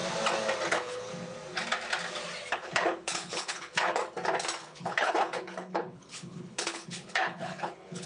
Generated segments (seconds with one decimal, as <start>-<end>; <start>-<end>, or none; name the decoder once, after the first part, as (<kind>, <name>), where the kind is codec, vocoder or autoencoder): 0.7-1.1 (codec, HILCodec); 2.5-4.0; 4.6-8.1